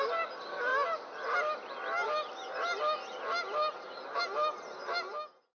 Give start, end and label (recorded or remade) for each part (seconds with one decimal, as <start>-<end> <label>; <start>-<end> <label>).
0.0-5.5 recorded